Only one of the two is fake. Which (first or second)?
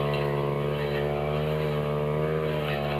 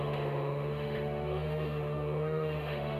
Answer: second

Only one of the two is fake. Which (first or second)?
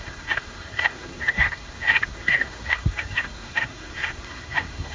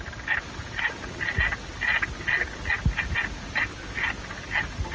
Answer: first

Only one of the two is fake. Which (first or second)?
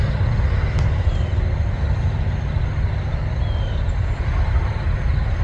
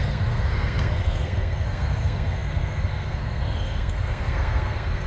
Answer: second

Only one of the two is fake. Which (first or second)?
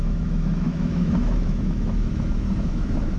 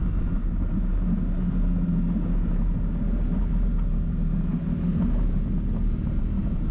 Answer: first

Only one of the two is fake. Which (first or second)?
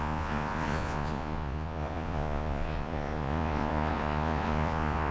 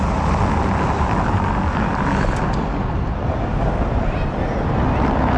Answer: first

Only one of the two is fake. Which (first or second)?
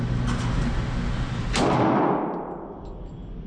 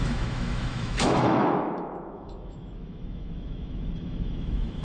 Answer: second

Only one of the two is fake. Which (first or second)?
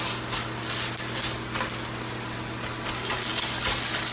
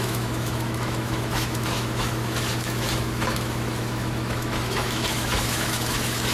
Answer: second